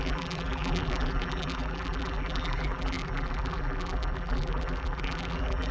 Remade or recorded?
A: remade